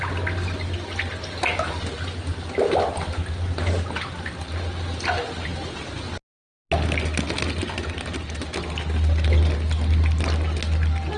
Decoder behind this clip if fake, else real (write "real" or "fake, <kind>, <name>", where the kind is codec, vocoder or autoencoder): real